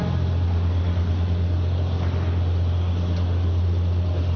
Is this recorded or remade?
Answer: recorded